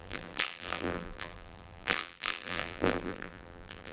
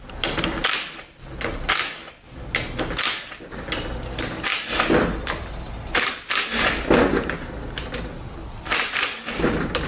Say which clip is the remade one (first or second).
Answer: first